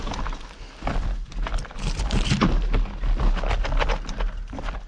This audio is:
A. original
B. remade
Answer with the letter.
A